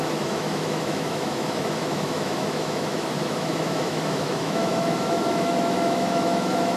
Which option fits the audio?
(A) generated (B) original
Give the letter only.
A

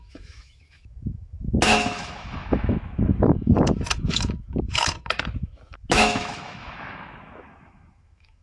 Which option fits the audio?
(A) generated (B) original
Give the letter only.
A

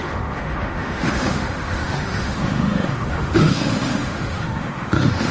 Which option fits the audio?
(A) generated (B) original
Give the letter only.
A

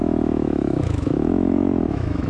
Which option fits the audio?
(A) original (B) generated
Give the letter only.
B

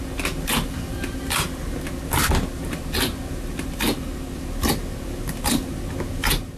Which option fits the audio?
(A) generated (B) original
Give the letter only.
B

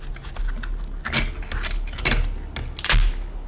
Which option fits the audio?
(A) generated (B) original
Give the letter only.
B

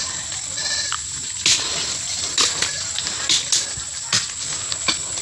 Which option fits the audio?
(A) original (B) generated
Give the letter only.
A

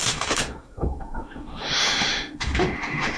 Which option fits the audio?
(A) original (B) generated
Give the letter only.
B